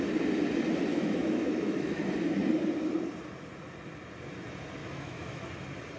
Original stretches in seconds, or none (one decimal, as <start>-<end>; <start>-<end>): 0.0-0.9; 2.1-4.8; 5.5-6.0